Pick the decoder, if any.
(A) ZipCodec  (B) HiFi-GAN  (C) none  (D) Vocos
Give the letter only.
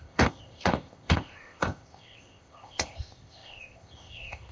A